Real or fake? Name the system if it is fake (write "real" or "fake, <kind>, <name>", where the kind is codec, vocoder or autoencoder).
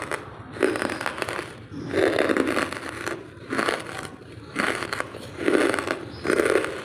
real